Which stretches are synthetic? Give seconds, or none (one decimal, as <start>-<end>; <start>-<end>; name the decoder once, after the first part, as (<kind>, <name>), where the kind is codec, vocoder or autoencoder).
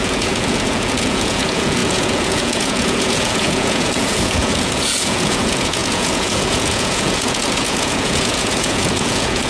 0.0-9.5 (vocoder, Vocos)